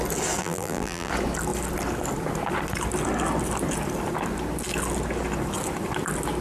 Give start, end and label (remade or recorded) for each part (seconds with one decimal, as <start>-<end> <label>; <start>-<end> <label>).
0.0-0.4 recorded; 0.4-1.1 remade; 1.1-6.4 recorded